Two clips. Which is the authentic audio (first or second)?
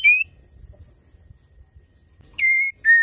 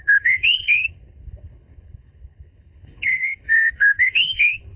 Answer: first